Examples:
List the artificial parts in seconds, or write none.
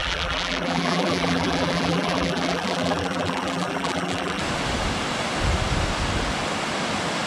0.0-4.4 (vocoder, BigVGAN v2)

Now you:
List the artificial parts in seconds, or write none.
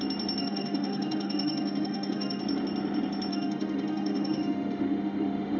0.4-2.4 (autoencoder, DAC-VAE); 3.3-5.6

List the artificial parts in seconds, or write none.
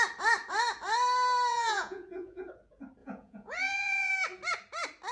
1.5-2.5 (vocoder, Vocos); 3.0-4.1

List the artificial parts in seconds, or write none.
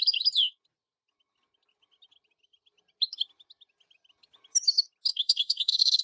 5.1-6.0 (codec, SNAC)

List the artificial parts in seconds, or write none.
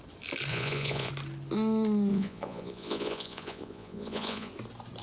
0.5-1.1 (vocoder, Vocos); 2.1-4.5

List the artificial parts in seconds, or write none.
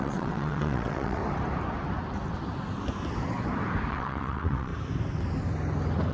0.0-1.2 (vocoder, WaveNeXt); 3.9-4.7